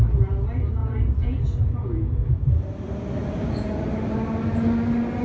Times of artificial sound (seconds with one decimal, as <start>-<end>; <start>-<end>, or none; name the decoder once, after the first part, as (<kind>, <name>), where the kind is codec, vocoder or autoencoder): 0.8-2.3 (vocoder, Vocos); 3.2-3.8